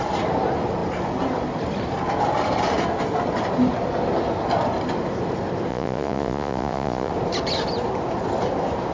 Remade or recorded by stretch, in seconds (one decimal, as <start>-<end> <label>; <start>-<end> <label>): 0.0-5.7 recorded; 5.7-7.1 remade; 7.1-8.9 recorded